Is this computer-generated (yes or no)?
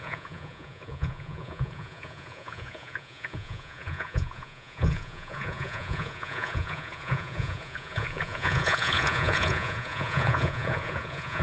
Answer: yes